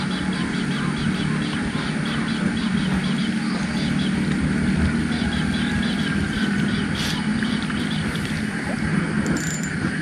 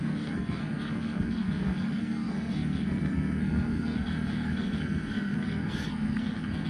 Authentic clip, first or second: first